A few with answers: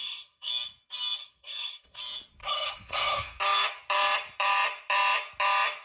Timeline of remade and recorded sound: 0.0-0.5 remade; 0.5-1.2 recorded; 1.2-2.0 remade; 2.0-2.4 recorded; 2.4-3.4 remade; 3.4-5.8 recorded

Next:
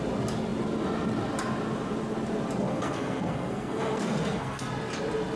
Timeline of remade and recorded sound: 0.0-2.7 recorded; 2.7-4.6 remade; 4.6-5.4 recorded

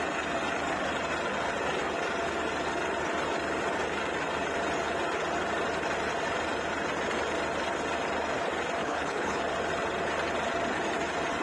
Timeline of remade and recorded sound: 0.0-8.8 recorded; 8.8-9.4 remade; 9.4-11.4 recorded